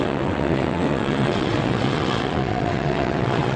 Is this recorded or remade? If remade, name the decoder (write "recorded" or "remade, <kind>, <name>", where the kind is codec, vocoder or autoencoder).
remade, vocoder, WaveNeXt